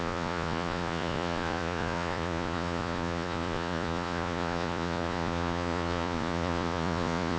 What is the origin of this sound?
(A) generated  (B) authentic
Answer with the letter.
A